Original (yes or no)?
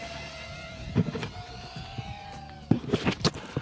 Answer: yes